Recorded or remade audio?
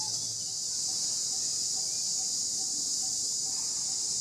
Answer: recorded